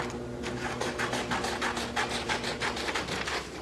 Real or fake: real